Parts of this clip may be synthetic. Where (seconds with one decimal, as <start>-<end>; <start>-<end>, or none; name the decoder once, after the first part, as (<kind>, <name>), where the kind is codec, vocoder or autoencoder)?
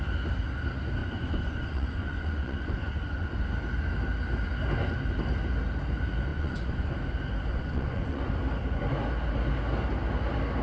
1.0-3.5 (vocoder, Vocos); 6.3-6.9; 7.5-8.3